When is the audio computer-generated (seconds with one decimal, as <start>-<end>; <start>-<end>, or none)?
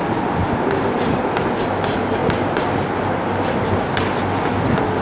none